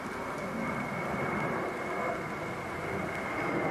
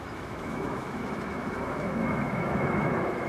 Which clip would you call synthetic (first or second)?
second